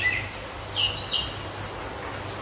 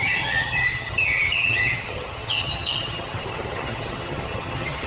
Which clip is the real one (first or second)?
first